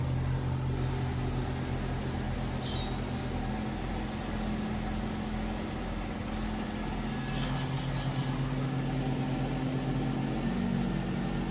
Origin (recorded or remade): recorded